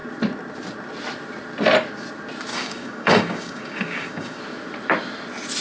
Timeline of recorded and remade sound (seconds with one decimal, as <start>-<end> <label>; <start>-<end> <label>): 0.0-2.5 recorded; 2.5-4.4 remade; 4.4-5.6 recorded